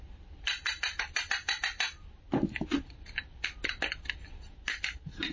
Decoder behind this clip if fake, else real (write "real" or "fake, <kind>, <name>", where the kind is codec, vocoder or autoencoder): real